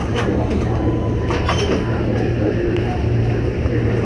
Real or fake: fake